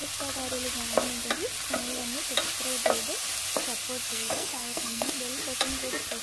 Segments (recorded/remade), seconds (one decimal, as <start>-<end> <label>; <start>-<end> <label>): 0.0-4.1 recorded; 4.1-5.1 remade; 5.1-6.2 recorded